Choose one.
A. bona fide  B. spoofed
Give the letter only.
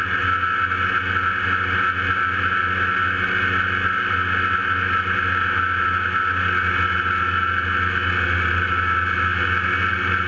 A